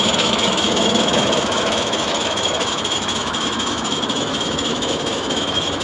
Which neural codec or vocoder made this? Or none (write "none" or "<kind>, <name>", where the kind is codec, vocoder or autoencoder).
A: autoencoder, DAC-VAE